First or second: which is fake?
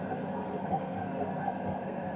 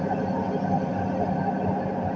first